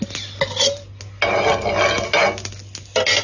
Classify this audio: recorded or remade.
recorded